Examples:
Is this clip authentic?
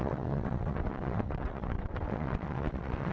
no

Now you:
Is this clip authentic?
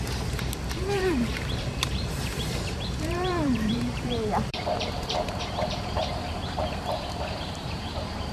no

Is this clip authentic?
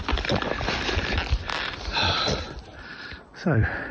no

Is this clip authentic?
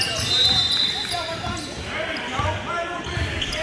yes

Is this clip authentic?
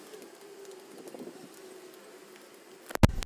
yes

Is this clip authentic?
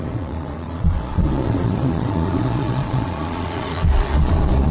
no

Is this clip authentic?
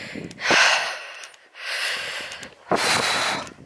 yes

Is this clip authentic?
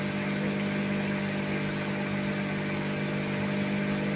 yes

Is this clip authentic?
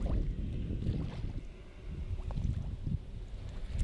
yes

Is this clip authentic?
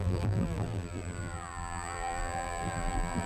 no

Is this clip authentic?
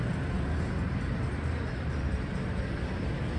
yes